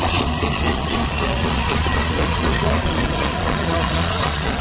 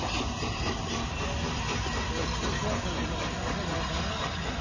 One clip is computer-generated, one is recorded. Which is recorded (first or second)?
second